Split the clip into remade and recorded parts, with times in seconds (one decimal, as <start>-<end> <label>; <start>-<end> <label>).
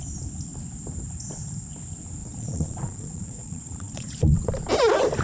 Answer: 0.0-2.2 recorded; 2.2-4.5 remade; 4.5-5.2 recorded